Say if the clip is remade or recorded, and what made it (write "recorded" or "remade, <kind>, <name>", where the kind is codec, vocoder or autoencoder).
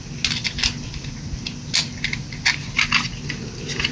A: recorded